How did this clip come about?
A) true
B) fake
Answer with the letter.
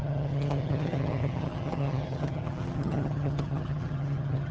B